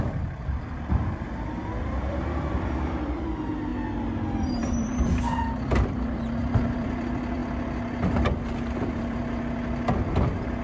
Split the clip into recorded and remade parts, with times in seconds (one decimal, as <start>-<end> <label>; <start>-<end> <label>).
0.0-3.7 remade; 3.7-4.8 recorded; 4.8-7.4 remade; 7.4-8.9 recorded; 8.9-10.6 remade